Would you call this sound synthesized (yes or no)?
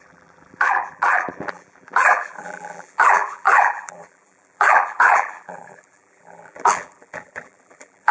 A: yes